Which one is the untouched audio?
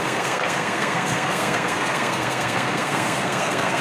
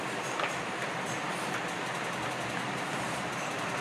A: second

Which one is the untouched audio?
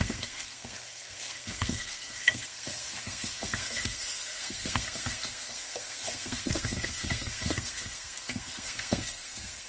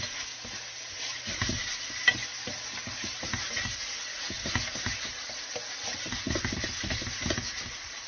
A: second